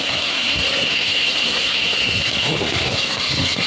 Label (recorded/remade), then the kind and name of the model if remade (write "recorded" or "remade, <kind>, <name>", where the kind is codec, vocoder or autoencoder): remade, codec, SNAC